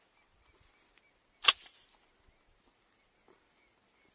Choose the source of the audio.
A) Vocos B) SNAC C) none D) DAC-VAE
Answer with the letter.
C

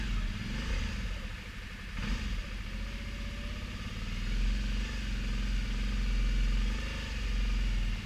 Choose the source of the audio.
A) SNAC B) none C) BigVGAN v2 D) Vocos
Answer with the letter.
B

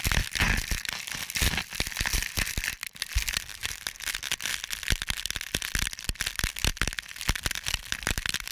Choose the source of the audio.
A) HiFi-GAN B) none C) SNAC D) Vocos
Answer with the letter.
B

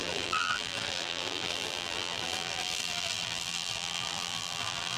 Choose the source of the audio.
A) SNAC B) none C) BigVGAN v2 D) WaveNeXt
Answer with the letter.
C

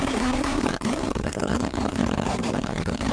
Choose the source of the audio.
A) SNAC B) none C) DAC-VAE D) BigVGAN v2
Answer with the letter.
A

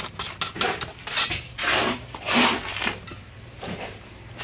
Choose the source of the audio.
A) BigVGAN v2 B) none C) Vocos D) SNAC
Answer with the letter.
B